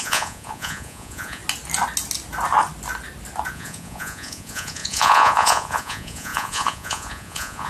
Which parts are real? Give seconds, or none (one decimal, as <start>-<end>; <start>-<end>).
1.4-3.5